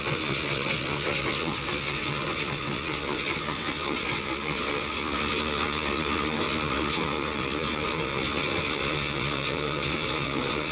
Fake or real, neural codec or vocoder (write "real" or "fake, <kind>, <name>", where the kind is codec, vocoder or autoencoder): fake, vocoder, WaveNeXt